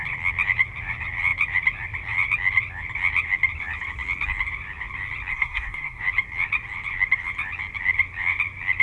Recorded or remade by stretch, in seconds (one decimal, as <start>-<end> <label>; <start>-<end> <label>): 0.0-5.3 recorded; 5.3-6.0 remade; 6.0-8.8 recorded